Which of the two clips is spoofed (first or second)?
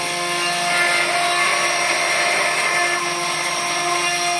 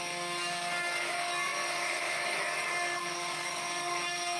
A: second